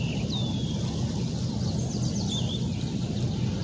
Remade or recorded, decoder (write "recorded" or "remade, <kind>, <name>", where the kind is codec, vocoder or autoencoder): recorded